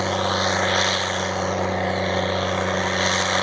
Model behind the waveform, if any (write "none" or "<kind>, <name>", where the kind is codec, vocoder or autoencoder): none